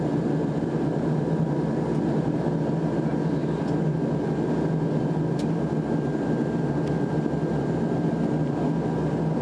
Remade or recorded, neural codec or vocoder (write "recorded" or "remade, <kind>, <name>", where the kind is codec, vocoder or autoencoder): recorded